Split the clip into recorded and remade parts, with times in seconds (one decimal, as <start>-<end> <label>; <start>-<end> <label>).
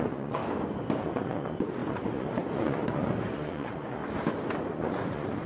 0.0-0.4 remade; 0.4-1.0 recorded; 1.0-4.0 remade; 4.0-4.7 recorded; 4.7-5.5 remade